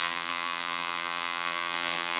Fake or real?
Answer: fake